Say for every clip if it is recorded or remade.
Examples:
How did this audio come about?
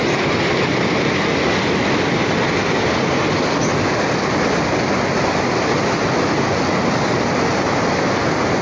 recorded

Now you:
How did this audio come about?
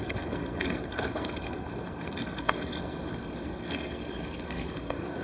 remade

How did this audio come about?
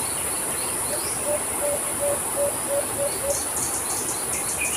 recorded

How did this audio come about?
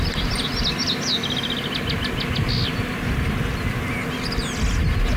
recorded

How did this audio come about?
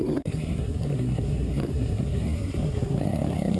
remade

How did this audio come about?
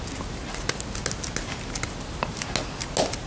recorded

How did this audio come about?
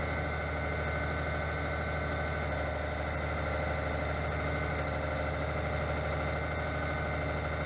recorded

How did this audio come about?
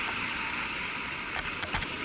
recorded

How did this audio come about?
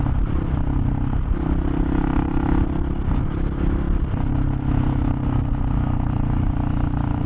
recorded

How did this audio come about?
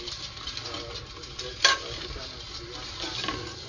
recorded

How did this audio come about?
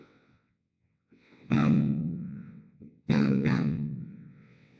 remade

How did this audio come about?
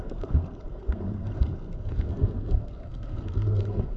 remade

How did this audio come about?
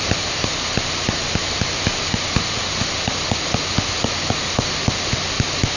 recorded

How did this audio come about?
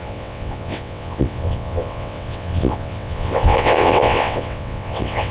remade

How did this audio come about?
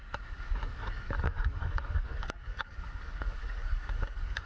remade